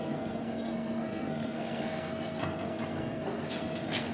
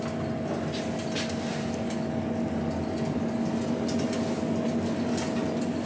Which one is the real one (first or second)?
second